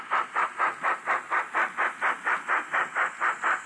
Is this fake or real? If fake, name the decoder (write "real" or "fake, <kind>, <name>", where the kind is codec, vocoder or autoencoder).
real